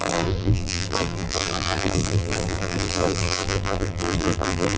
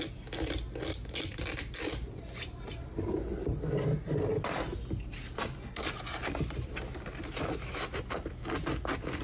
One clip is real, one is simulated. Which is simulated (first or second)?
first